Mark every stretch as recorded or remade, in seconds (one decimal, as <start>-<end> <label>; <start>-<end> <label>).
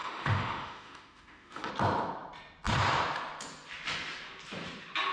0.0-1.7 remade; 1.7-5.1 recorded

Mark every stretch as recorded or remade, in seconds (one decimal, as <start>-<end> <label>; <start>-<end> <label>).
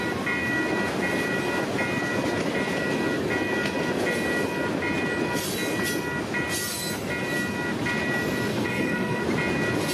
0.0-8.5 recorded; 8.5-9.2 remade; 9.2-9.9 recorded